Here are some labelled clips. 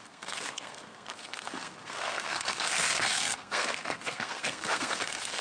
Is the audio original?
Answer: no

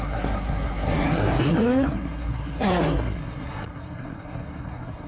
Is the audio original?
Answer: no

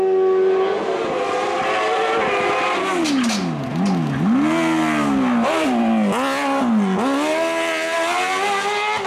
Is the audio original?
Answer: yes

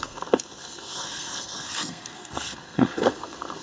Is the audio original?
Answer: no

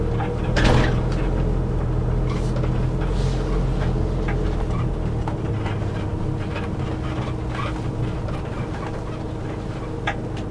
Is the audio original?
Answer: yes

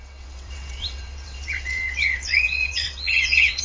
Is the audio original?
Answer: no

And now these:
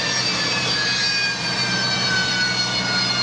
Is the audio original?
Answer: yes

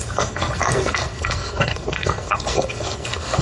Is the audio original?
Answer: no